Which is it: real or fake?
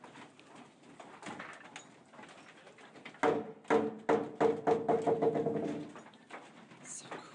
real